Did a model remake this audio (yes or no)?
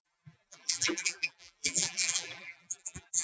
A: yes